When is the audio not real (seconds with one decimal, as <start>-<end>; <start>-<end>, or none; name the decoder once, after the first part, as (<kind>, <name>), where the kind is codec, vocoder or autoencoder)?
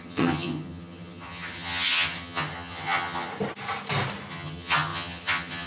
0.0-3.3 (vocoder, HiFi-GAN); 4.3-5.7